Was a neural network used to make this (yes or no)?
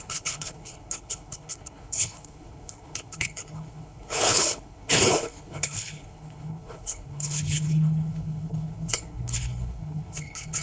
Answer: yes